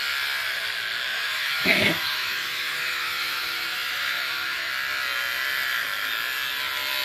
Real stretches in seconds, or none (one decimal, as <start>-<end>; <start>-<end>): 0.0-1.1; 4.7-7.0

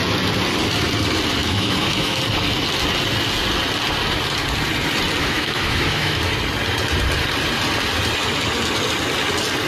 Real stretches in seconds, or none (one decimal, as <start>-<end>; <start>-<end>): 0.0-1.4; 2.2-5.2; 6.2-9.7